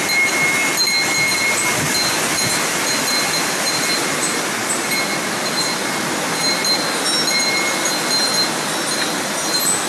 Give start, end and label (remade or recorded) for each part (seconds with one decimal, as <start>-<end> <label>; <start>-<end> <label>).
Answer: 0.0-9.9 recorded